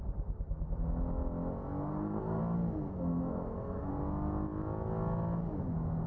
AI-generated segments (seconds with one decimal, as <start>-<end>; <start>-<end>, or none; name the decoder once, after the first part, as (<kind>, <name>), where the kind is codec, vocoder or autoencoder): 1.9-2.4 (codec, SNAC); 2.9-3.9